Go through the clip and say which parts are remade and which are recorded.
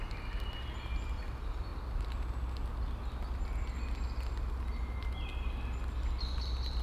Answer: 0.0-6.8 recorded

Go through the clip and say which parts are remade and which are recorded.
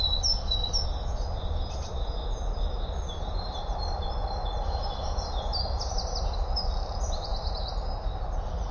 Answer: 0.0-8.7 recorded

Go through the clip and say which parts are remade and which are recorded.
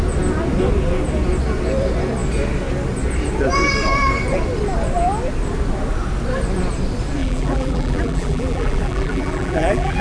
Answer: 0.0-7.2 recorded; 7.2-10.0 remade